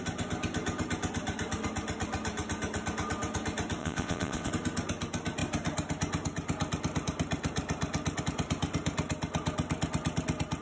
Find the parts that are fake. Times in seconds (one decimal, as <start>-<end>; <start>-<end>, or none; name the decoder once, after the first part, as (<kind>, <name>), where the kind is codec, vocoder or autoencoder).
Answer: 3.8-4.5 (vocoder, WaveNeXt)